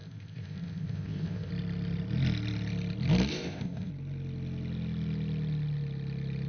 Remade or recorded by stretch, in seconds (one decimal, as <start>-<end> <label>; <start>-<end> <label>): 0.0-1.5 remade; 1.5-3.3 recorded; 3.3-3.9 remade; 3.9-6.5 recorded